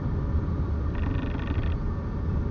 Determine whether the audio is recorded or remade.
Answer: recorded